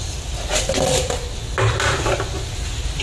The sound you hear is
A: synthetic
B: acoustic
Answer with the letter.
B